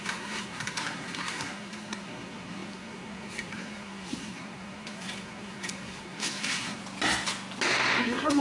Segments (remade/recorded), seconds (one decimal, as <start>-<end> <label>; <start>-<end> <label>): 0.0-6.8 remade; 6.8-8.0 recorded; 8.0-8.4 remade